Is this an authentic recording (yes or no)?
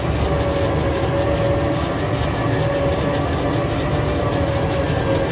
yes